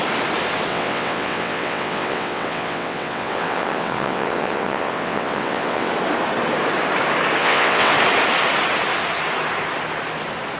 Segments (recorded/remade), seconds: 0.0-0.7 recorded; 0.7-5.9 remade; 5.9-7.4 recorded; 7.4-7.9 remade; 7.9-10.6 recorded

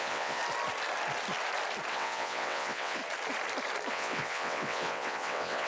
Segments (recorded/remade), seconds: 0.0-0.4 remade; 0.4-1.9 recorded; 1.9-3.0 remade; 3.0-3.9 recorded; 3.9-5.7 remade

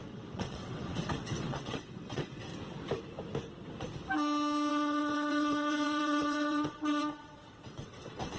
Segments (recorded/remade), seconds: 0.0-2.5 remade; 2.5-4.7 recorded; 4.7-8.4 remade

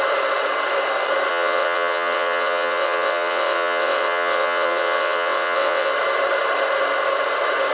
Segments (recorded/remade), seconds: 0.0-1.3 recorded; 1.3-5.9 remade; 5.9-7.7 recorded

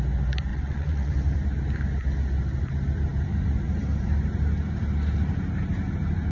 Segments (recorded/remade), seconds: 0.0-0.5 recorded; 0.5-1.1 remade; 1.1-6.3 recorded

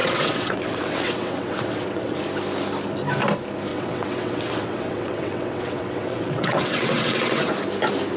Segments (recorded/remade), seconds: 0.0-2.2 remade; 2.2-3.7 recorded; 3.7-7.5 remade; 7.5-8.2 recorded

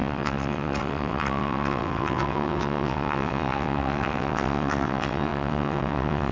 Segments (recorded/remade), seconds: 0.0-6.3 remade

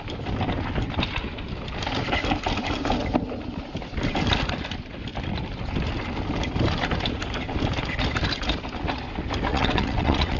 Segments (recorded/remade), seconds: 0.0-9.5 recorded; 9.5-10.4 remade